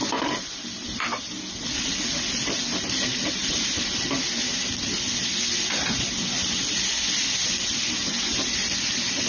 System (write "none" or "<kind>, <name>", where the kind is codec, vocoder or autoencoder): none